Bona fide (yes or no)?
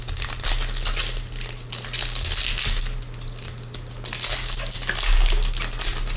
yes